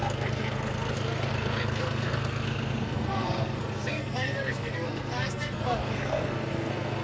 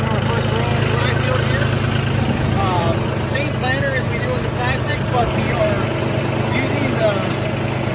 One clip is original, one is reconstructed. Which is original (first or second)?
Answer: second